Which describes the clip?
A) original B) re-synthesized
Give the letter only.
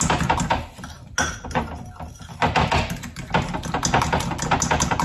A